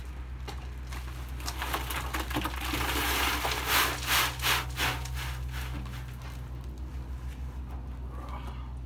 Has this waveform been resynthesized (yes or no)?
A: no